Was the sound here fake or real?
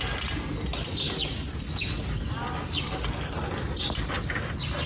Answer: real